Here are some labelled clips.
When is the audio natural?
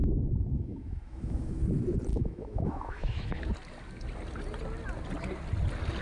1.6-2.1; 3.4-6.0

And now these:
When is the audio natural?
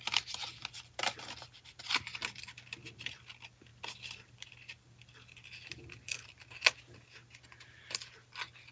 0.0-8.7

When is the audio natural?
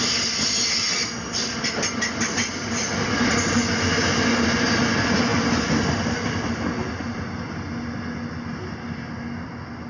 0.0-5.3; 6.6-9.9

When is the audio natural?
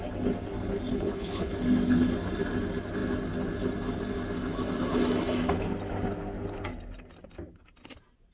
0.0-0.9; 1.5-8.3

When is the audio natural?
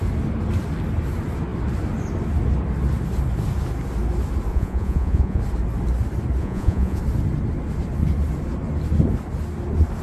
0.0-4.5; 5.4-6.4; 7.0-10.0